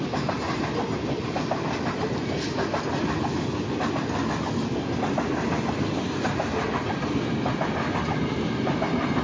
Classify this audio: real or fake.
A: real